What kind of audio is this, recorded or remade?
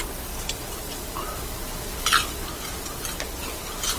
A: recorded